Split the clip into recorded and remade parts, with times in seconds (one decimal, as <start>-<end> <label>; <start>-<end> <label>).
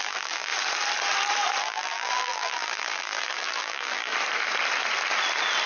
0.0-0.5 remade; 0.5-1.6 recorded; 1.6-4.1 remade; 4.1-5.7 recorded